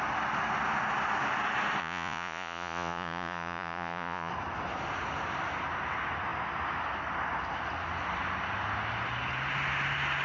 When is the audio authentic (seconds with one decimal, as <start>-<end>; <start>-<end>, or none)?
0.0-1.8; 4.3-10.2